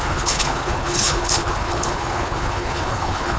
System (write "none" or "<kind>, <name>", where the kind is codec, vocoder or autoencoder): codec, HILCodec